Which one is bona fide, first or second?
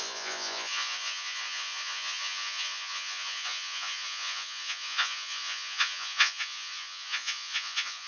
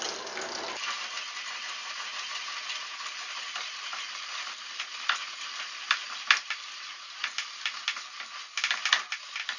second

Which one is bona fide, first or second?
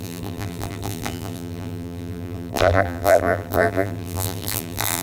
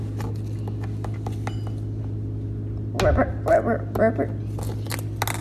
second